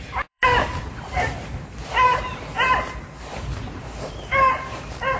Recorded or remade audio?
remade